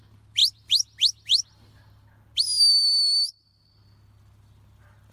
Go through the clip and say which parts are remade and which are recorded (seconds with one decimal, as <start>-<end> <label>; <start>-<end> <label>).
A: 0.0-5.1 recorded